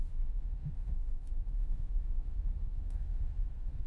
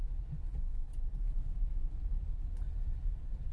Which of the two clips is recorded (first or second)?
second